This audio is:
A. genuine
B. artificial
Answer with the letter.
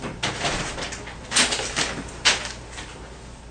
A